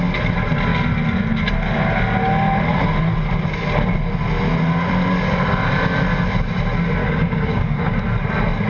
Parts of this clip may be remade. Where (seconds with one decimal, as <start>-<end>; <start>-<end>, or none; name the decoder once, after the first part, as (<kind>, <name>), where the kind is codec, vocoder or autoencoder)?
7.0-8.0 (codec, DAC)

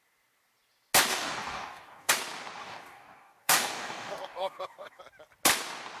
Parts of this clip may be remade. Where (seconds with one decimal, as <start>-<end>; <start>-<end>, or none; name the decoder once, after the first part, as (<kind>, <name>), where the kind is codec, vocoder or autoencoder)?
1.1-2.1 (codec, DAC); 2.6-5.0

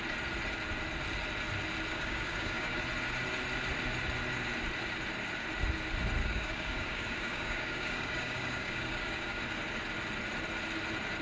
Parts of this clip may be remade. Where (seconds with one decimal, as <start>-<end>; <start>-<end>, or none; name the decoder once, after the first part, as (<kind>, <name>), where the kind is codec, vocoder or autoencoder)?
1.9-2.8 (codec, DAC); 6.2-9.4

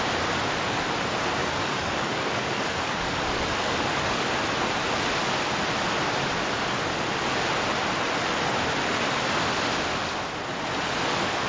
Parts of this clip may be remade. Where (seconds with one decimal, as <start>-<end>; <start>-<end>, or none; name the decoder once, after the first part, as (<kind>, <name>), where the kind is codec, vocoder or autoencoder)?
1.4-4.3 (codec, DAC)

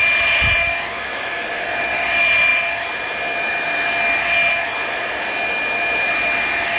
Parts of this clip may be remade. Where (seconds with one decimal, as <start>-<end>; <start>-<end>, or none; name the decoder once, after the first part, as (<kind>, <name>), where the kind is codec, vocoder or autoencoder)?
0.6-1.6 (codec, DAC)

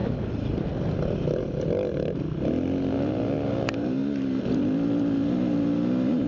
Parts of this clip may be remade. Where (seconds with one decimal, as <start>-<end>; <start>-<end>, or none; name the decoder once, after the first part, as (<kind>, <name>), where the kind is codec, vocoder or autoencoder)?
none